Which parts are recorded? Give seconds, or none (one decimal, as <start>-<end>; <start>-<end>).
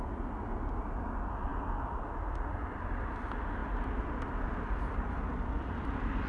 0.0-6.3